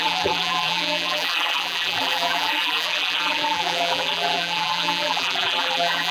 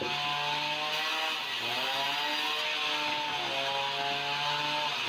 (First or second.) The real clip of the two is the second